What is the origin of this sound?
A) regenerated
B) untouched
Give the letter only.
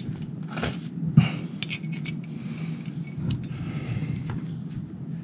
B